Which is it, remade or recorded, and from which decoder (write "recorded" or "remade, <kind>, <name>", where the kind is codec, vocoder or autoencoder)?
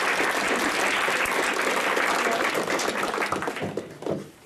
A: recorded